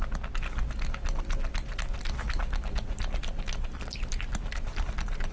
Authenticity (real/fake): real